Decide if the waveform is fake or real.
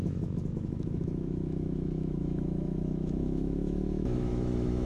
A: fake